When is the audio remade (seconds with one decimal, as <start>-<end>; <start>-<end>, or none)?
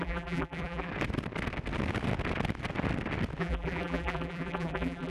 0.0-0.9; 3.4-5.1